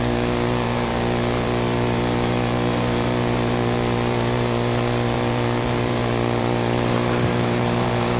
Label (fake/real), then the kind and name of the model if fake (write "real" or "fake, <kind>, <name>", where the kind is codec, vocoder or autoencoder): fake, vocoder, BigVGAN v2